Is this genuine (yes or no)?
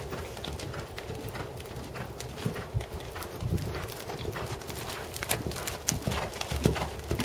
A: yes